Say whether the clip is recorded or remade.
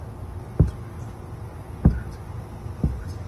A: recorded